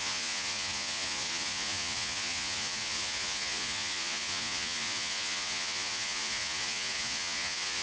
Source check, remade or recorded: remade